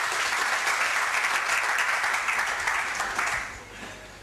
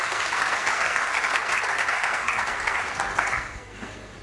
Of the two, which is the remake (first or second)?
second